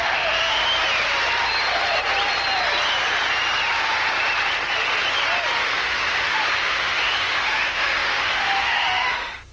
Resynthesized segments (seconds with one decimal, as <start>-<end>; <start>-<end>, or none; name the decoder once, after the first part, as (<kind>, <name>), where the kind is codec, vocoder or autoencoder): 0.0-0.6 (autoencoder, DAC-VAE); 5.6-9.5